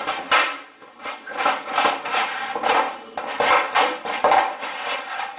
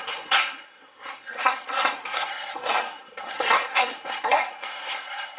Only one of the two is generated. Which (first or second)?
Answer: second